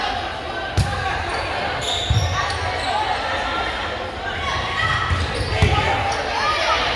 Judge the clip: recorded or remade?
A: recorded